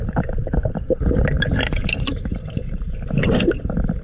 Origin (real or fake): fake